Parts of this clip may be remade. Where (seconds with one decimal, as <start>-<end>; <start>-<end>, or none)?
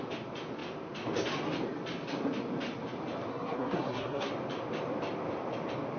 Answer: 3.3-4.3